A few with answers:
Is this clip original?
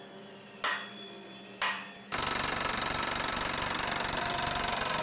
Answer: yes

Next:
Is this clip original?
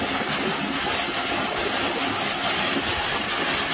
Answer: yes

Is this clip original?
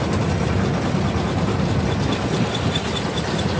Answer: yes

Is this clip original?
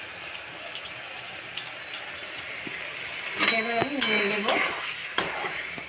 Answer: yes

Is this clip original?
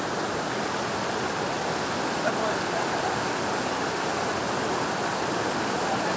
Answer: yes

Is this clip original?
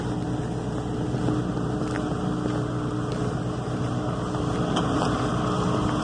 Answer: no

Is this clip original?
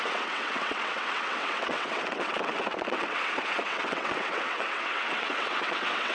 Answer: no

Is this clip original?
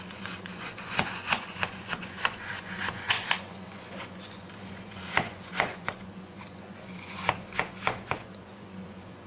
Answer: no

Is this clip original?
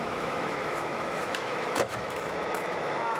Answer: no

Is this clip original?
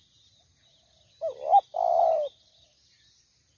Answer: yes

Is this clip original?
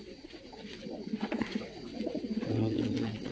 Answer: no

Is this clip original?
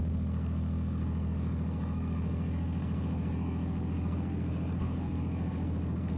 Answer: no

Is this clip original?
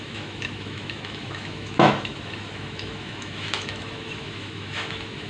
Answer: no